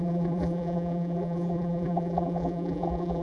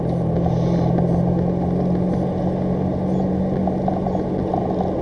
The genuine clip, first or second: second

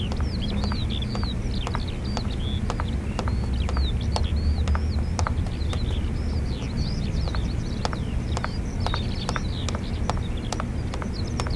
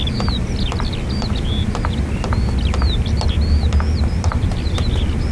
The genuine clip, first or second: first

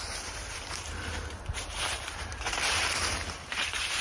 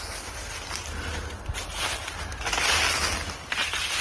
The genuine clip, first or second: second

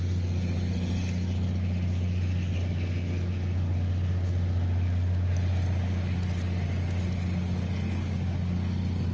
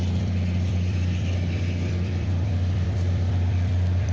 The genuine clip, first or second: first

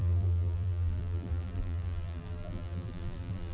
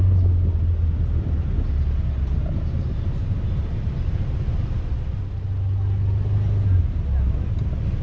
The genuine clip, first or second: second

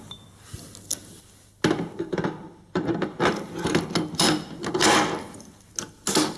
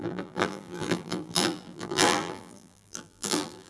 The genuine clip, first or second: first